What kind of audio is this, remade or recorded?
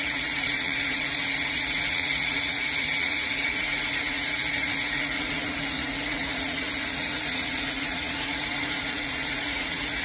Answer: remade